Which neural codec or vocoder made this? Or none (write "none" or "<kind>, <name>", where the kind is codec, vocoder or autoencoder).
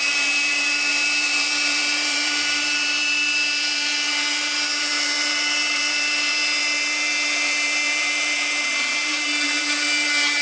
vocoder, BigVGAN v2